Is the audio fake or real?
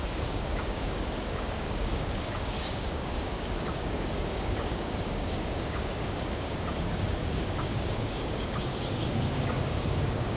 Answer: fake